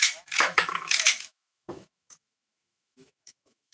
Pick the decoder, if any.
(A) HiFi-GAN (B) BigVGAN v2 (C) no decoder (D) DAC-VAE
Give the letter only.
D